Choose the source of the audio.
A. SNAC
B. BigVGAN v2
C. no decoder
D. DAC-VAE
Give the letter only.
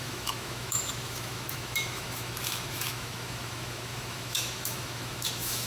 D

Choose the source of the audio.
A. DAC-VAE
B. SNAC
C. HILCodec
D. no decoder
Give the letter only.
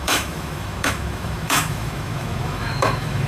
A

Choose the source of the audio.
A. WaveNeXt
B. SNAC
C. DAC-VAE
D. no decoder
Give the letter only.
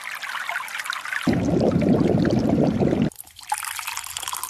D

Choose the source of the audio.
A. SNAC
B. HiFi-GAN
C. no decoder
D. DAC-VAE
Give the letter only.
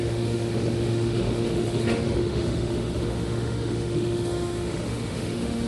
D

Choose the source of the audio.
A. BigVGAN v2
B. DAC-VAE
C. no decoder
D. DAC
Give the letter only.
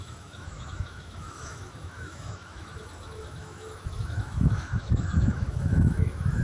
B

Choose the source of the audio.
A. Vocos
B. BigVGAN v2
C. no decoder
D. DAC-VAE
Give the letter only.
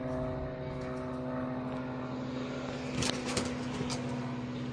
C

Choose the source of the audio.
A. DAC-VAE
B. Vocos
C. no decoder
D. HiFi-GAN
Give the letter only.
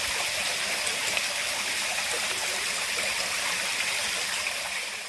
C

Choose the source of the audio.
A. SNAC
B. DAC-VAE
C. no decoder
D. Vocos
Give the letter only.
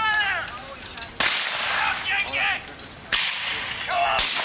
C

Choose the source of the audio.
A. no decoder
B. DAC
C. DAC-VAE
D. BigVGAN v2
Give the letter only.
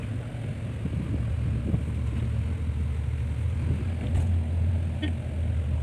A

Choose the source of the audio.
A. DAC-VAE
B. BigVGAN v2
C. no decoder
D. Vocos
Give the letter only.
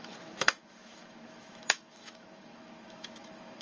A